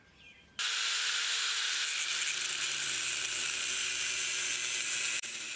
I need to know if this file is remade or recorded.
recorded